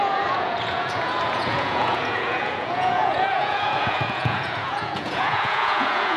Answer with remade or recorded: remade